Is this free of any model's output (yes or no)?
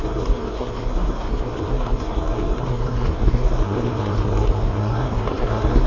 no